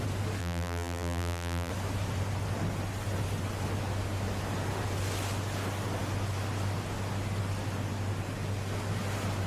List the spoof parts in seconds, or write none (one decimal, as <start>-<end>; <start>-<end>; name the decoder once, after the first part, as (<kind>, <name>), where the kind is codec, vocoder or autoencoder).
0.4-1.7 (vocoder, BigVGAN v2)